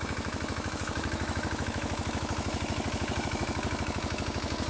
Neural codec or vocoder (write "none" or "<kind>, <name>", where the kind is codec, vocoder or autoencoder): autoencoder, DAC-VAE